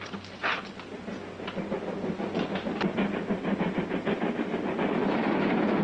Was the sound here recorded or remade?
recorded